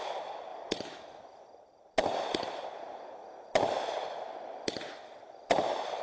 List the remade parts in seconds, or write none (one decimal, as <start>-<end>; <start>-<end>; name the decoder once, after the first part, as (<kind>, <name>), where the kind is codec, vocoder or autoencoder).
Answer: none